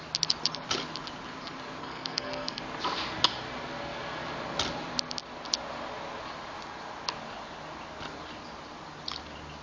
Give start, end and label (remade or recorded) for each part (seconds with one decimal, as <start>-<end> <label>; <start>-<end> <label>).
0.0-1.8 recorded; 1.8-2.6 remade; 2.6-9.6 recorded